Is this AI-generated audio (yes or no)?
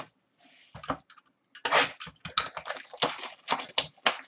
no